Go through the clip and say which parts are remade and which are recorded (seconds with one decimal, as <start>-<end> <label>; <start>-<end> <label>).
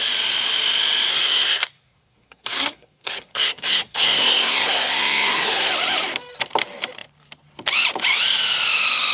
0.0-1.1 recorded; 1.1-5.7 remade; 5.7-9.1 recorded